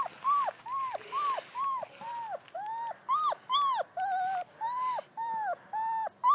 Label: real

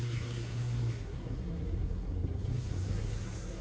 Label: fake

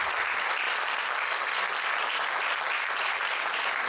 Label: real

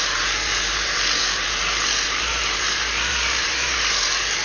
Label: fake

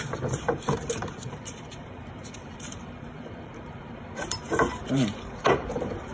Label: fake